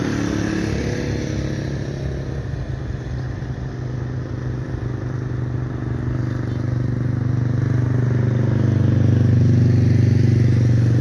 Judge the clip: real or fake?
real